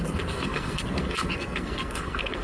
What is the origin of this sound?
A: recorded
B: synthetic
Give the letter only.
B